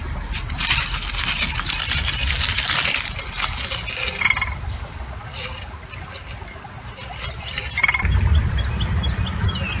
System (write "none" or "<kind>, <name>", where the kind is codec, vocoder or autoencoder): none